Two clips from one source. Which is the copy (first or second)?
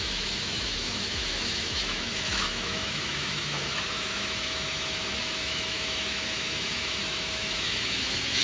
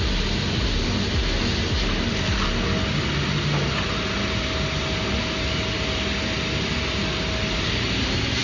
first